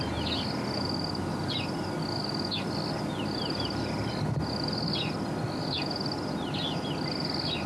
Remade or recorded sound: recorded